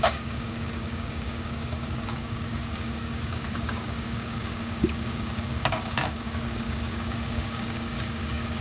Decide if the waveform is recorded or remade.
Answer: remade